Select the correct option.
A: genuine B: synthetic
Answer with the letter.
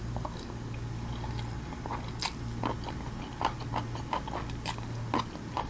A